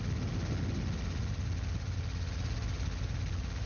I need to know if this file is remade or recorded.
recorded